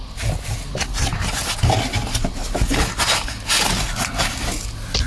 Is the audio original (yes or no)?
yes